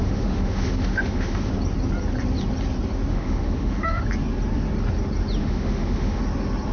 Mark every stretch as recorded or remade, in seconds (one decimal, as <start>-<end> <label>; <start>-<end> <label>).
0.0-1.5 remade; 1.5-3.1 recorded; 3.1-4.0 remade; 4.0-5.4 recorded; 5.4-6.2 remade; 6.2-6.7 recorded